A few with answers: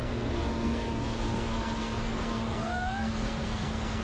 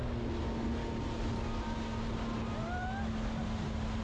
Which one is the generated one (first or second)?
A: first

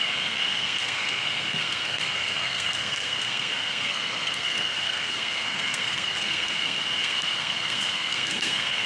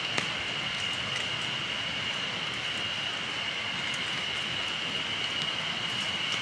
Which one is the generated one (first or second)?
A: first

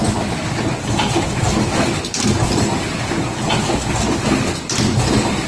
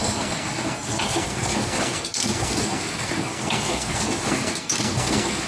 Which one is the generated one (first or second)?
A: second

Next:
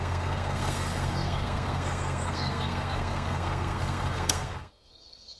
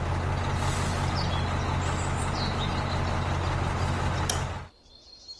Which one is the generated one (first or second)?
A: first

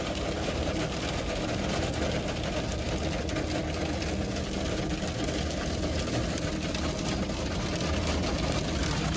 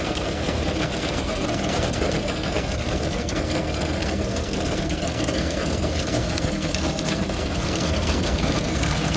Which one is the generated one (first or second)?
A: second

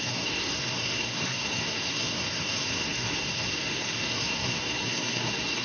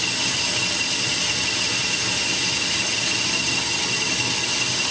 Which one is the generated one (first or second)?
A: first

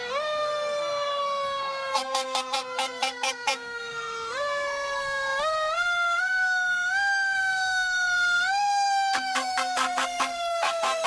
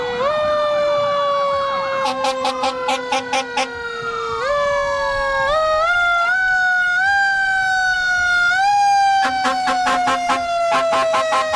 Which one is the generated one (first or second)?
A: first